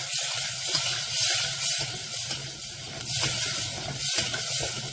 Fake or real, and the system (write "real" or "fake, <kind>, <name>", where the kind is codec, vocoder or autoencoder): real